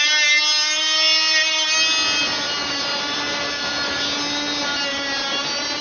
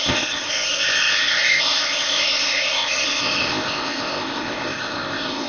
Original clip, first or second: first